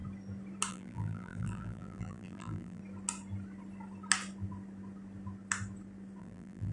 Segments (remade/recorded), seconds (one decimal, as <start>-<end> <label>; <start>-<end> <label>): 0.0-0.7 recorded; 0.7-2.8 remade; 2.8-6.2 recorded; 6.2-6.7 remade